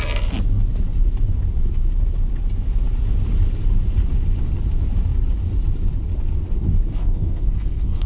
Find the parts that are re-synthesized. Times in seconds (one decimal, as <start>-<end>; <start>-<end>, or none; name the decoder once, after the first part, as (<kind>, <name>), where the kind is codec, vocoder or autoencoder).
6.9-8.1 (codec, SNAC)